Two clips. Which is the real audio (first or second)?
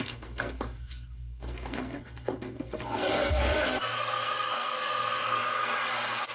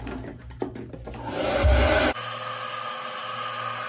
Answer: second